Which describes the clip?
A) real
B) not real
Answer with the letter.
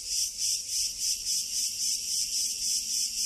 B